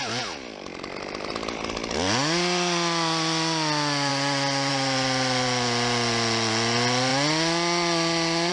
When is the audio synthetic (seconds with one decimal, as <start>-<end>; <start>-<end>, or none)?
none